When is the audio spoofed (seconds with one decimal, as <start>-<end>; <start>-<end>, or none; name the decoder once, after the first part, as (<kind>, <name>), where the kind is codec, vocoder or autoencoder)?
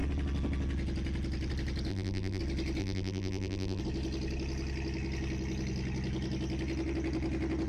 1.9-2.4 (vocoder, BigVGAN v2); 2.8-3.8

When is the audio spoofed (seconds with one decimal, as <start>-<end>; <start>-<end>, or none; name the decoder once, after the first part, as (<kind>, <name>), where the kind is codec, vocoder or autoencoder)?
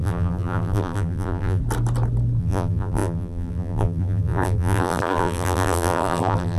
0.0-1.6 (vocoder, BigVGAN v2); 2.4-6.6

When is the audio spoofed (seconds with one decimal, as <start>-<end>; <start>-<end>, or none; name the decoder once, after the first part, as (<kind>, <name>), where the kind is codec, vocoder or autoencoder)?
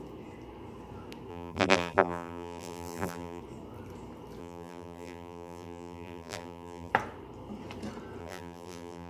1.3-3.4 (vocoder, BigVGAN v2); 4.4-6.9; 8.2-9.1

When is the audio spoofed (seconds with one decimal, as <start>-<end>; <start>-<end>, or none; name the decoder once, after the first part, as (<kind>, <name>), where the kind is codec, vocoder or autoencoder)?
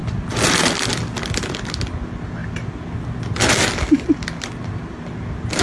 0.0-0.6 (vocoder, BigVGAN v2)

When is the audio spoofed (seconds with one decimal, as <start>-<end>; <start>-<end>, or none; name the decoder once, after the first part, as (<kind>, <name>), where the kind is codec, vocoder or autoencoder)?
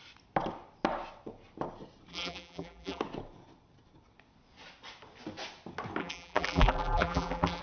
2.1-3.0 (vocoder, BigVGAN v2); 6.0-7.6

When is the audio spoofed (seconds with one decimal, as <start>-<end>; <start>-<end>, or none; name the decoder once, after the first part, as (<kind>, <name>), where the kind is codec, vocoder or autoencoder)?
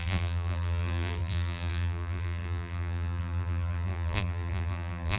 0.0-5.2 (vocoder, BigVGAN v2)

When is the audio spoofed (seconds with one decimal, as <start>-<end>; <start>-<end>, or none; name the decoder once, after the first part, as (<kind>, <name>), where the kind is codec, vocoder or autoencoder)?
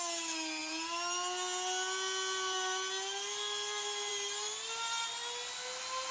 none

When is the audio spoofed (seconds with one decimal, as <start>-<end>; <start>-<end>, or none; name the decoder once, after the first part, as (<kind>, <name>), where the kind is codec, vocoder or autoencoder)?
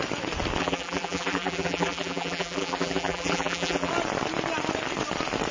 0.6-3.9 (vocoder, BigVGAN v2)